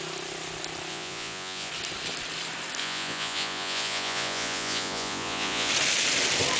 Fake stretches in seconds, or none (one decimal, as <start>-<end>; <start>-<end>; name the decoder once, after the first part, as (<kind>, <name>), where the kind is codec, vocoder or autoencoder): 0.9-1.7 (vocoder, Vocos); 2.8-5.7